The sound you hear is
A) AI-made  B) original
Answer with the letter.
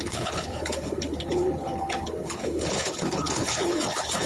A